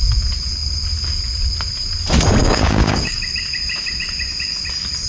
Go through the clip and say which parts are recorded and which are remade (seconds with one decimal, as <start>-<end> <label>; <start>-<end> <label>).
0.0-2.4 recorded; 2.4-3.2 remade; 3.2-5.1 recorded